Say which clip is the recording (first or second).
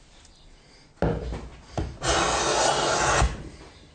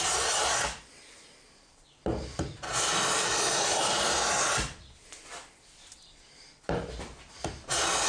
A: first